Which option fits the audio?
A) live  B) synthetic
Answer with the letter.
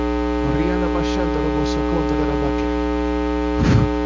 A